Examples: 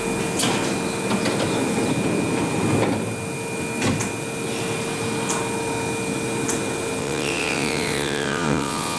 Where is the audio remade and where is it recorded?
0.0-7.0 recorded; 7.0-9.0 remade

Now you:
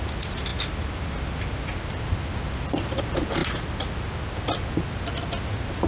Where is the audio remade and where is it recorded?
0.0-5.9 recorded

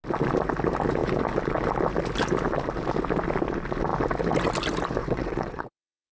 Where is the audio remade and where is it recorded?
0.0-5.0 recorded; 5.0-6.1 remade